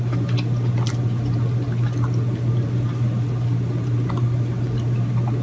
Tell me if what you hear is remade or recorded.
recorded